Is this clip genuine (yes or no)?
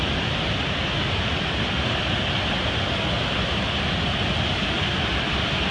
yes